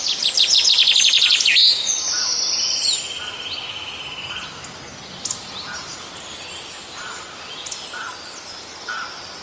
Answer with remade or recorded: recorded